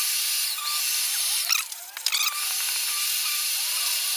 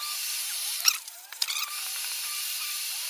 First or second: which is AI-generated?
second